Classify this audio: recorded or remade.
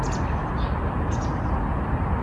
recorded